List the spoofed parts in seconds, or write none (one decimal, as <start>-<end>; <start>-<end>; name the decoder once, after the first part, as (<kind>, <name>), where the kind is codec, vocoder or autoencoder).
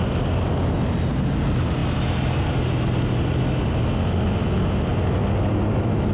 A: none